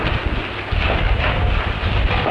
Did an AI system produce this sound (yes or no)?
no